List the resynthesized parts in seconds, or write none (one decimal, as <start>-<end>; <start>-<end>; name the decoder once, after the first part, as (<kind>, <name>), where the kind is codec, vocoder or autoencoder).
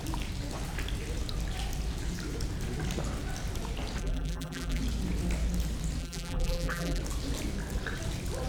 4.0-4.8 (vocoder, BigVGAN v2); 6.0-7.0